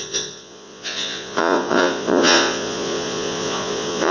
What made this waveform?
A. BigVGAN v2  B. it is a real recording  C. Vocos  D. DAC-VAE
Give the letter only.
C